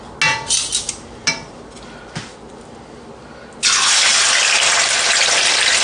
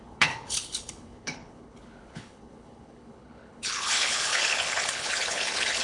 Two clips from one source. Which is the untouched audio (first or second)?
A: first